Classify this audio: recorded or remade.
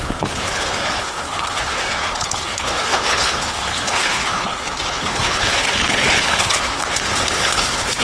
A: remade